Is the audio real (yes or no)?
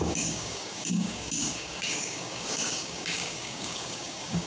no